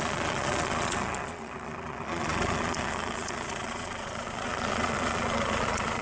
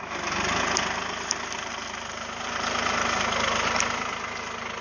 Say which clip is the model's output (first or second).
first